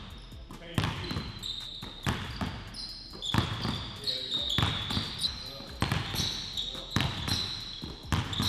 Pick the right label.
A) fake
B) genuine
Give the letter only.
B